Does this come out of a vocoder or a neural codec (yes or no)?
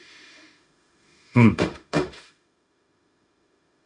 yes